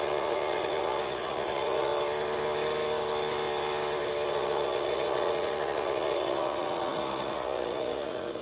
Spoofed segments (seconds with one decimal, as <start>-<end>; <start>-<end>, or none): 0.0-1.9; 4.3-8.4